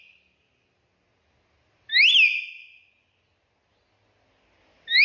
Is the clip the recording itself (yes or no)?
yes